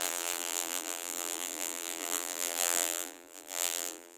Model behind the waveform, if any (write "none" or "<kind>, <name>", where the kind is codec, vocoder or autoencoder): vocoder, BigVGAN v2